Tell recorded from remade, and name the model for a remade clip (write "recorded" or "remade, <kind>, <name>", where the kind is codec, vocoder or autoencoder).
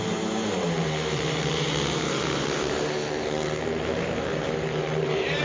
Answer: remade, vocoder, BigVGAN v2